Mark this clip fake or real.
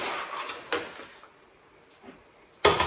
real